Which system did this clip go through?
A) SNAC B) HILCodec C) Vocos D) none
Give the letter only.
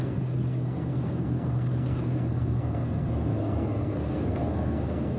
A